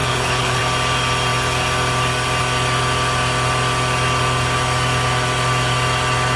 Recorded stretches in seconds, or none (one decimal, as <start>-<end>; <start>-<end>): 0.6-6.4